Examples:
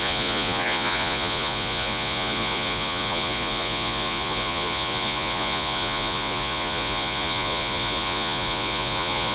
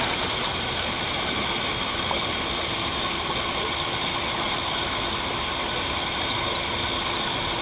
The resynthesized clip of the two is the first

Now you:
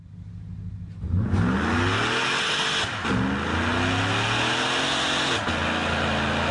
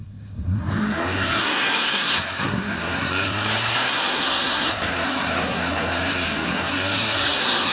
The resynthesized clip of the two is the second